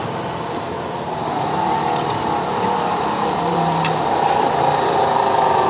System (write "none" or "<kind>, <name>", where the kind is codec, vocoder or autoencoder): vocoder, BigVGAN v2